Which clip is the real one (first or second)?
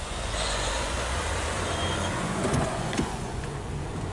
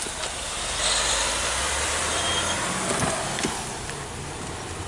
second